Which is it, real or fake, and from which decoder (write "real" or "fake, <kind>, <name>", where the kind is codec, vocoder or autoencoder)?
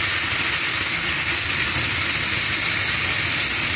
real